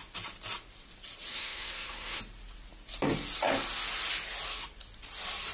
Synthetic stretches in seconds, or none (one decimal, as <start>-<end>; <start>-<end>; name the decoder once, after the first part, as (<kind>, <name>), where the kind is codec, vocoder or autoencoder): 1.3-2.2 (codec, SNAC)